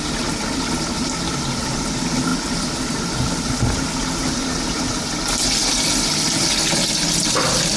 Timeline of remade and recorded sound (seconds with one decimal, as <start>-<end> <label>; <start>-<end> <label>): 0.0-7.8 recorded